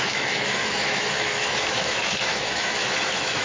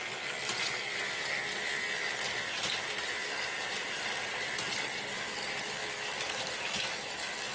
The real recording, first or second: second